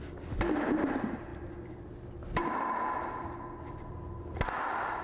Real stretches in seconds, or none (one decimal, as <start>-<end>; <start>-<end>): 0.0-5.0